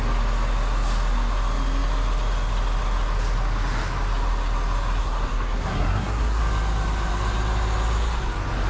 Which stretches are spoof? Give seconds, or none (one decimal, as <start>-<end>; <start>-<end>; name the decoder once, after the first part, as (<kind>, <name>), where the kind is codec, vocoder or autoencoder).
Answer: 5.0-6.4 (codec, SNAC)